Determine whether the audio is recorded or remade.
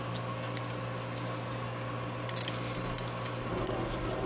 recorded